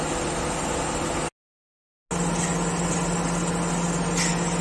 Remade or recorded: recorded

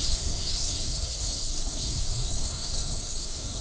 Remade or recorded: remade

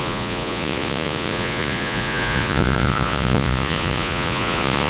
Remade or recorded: remade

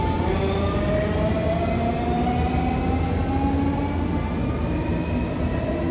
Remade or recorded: recorded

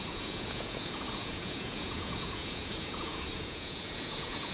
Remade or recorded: remade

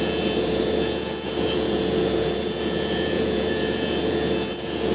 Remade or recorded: remade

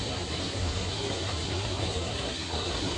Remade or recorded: remade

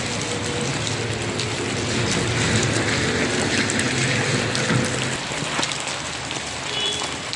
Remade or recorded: recorded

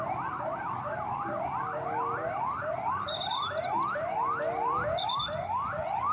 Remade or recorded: recorded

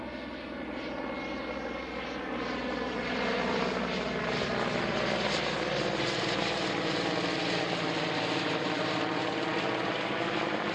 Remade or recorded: recorded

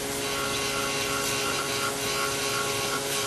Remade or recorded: recorded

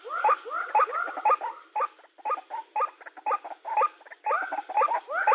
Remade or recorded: recorded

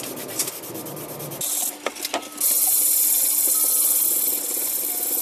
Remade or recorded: recorded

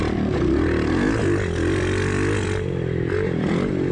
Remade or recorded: recorded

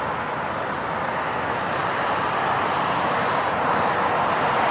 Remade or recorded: recorded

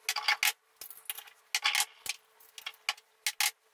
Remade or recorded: recorded